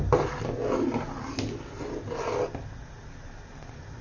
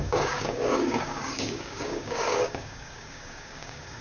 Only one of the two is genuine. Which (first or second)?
first